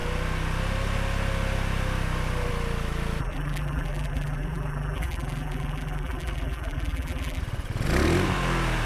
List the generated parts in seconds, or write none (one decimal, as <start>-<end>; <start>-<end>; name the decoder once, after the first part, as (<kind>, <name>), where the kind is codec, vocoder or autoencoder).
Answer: 3.2-7.4 (vocoder, BigVGAN v2)